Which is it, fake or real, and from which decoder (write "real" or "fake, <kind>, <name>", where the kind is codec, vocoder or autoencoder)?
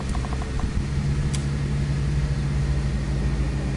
real